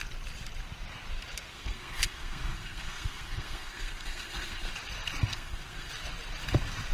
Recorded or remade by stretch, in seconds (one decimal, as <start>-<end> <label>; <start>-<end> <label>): 0.0-1.5 recorded; 1.5-4.7 remade; 4.7-5.3 recorded; 5.3-5.9 remade; 5.9-6.9 recorded